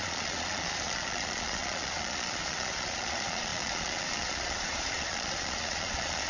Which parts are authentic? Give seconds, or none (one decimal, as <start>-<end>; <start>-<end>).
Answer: none